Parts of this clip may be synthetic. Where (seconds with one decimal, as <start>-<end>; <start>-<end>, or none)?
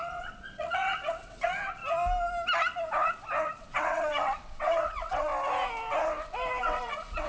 0.0-1.8; 3.6-5.3; 6.6-7.3